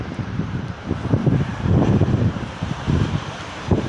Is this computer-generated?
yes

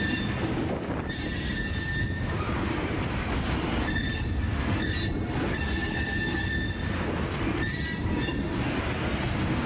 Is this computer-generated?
no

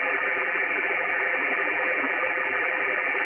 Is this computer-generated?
yes